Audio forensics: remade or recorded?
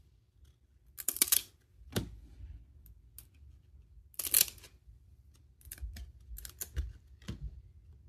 recorded